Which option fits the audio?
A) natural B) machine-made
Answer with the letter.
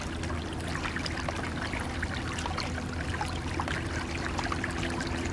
A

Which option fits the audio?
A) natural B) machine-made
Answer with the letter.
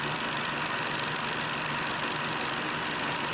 A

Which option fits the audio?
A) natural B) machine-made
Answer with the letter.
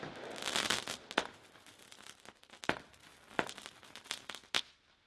A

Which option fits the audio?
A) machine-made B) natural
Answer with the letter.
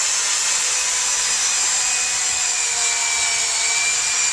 B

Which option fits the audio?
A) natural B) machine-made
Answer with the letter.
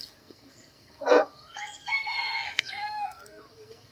B